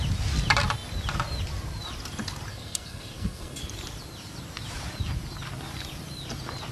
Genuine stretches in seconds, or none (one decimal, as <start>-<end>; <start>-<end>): 0.0-2.5; 3.6-6.7